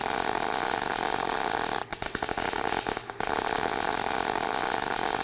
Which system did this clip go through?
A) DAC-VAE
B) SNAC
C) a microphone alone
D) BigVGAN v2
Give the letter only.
C